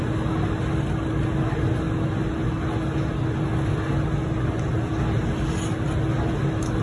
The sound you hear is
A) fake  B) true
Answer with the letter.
B